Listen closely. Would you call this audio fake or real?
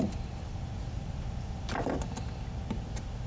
real